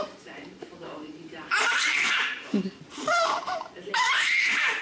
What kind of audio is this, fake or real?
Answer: fake